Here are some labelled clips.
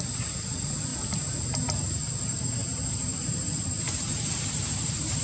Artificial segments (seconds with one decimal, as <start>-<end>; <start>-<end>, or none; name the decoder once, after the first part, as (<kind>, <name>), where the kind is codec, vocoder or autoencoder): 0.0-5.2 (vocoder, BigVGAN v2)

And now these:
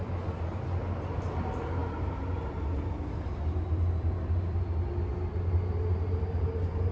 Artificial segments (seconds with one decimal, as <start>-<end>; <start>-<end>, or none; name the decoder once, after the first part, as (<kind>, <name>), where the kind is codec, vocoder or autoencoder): none

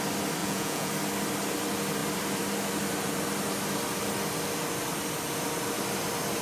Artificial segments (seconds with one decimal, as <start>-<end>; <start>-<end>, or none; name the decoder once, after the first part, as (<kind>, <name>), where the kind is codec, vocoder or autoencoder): 0.4-0.9 (vocoder, Vocos)

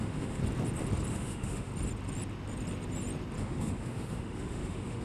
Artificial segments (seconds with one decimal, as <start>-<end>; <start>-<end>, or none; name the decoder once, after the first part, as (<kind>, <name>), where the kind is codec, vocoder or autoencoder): 0.0-0.4 (autoencoder, DAC-VAE); 1.1-1.7; 3.4-5.0